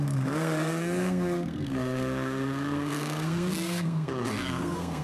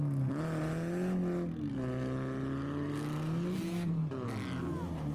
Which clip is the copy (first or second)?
first